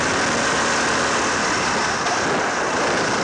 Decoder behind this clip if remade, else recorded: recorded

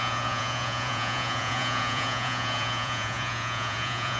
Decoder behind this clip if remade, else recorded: remade, vocoder, Vocos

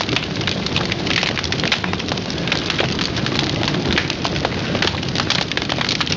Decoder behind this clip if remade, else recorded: recorded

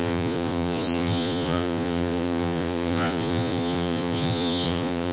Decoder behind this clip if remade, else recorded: remade, vocoder, Vocos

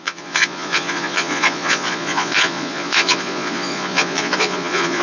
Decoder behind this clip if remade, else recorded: remade, vocoder, Vocos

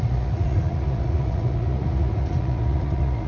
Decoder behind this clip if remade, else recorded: remade, vocoder, Vocos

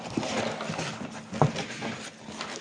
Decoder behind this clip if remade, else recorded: recorded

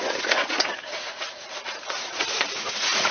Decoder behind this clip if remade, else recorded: remade, vocoder, Vocos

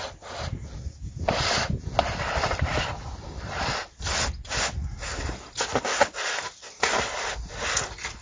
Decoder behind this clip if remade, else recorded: recorded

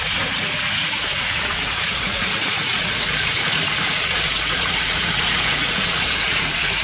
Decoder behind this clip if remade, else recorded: remade, vocoder, Vocos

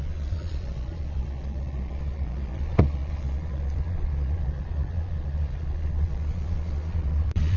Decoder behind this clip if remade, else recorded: remade, vocoder, Vocos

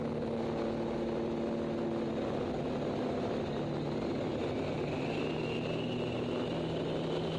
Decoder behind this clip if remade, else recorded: recorded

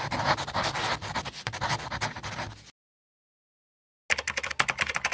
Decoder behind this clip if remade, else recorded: recorded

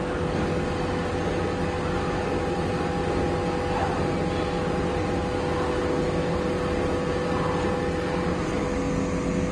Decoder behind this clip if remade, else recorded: recorded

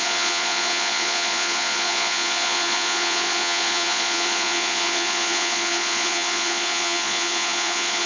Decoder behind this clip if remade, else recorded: remade, vocoder, Vocos